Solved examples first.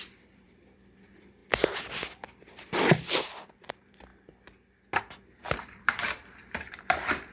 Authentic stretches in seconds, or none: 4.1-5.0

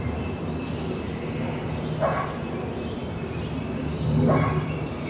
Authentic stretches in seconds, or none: 0.0-3.0

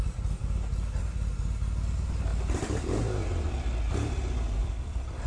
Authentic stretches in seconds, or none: 0.0-2.3; 3.5-4.6

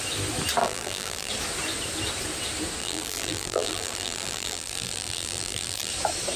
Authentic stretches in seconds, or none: 0.0-0.6; 1.3-2.8; 5.9-6.4

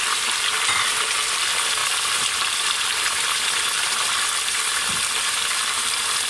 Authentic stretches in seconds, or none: none